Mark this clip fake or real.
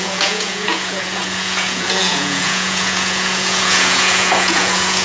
fake